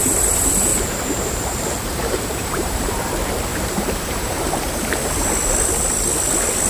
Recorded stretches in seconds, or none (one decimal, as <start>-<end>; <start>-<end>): 0.0-0.7; 2.9-3.5; 5.3-6.7